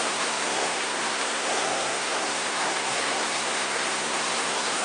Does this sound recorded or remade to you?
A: remade